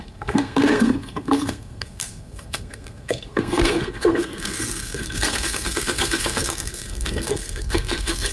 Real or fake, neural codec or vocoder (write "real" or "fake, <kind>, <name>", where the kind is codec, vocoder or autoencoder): fake, codec, SNAC